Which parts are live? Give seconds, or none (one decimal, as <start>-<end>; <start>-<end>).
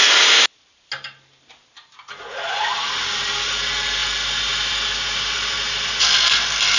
0.0-6.8